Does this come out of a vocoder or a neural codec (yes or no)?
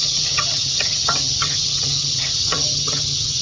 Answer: yes